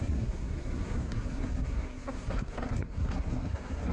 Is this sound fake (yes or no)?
yes